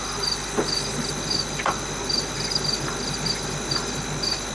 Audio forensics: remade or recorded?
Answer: recorded